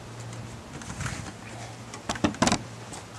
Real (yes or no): yes